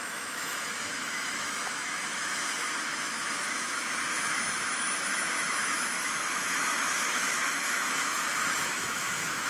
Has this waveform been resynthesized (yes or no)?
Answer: yes